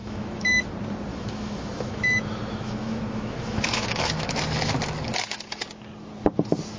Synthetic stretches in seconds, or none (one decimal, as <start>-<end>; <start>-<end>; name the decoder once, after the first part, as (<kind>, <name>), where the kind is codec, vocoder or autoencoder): 0.0-0.7 (autoencoder, DAC-VAE); 1.1-4.4

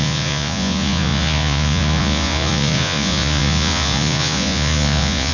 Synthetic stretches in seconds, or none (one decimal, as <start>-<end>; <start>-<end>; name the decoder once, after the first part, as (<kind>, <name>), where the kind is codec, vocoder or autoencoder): 0.0-5.3 (vocoder, Vocos)

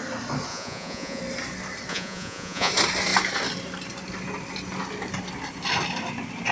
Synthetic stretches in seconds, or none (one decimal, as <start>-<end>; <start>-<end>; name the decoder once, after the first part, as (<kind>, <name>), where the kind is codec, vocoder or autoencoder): 0.5-1.2 (vocoder, Vocos); 1.9-2.7

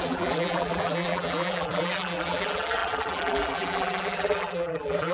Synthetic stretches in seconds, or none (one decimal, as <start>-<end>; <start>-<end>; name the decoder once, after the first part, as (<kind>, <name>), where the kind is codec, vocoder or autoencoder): 0.0-5.1 (vocoder, BigVGAN v2)

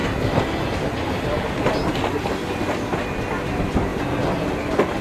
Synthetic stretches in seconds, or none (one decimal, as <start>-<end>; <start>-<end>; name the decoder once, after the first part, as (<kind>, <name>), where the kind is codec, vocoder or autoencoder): none

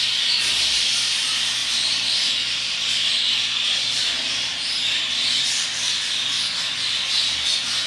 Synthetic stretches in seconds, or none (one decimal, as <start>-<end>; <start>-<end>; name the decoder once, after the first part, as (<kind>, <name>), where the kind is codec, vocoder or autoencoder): 1.6-5.1 (vocoder, BigVGAN v2)